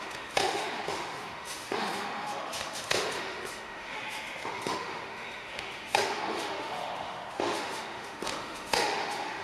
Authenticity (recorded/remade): remade